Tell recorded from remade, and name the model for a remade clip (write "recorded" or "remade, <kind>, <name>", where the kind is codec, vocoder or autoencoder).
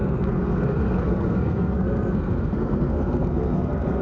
remade, codec, SNAC